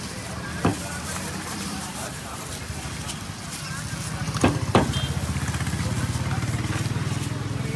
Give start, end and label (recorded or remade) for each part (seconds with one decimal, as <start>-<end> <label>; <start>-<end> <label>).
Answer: 0.0-0.7 recorded; 0.7-2.5 remade; 2.5-7.8 recorded